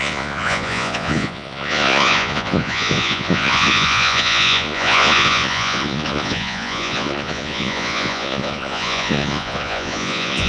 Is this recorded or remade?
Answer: remade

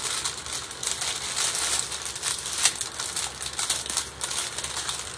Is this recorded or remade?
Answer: recorded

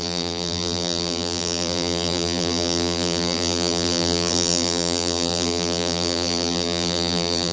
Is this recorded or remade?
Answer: remade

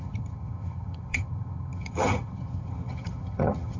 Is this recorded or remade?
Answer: remade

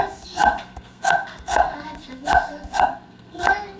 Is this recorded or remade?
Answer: remade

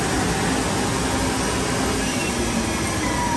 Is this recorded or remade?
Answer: recorded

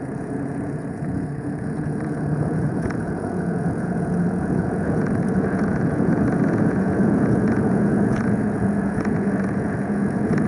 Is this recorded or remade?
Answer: remade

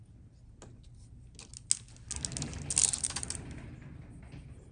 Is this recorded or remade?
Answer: recorded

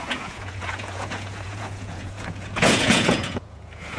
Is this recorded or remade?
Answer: remade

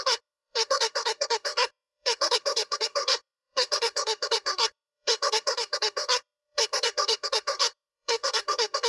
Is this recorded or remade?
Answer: remade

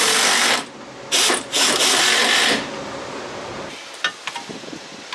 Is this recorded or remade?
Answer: recorded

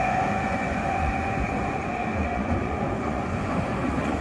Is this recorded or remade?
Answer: remade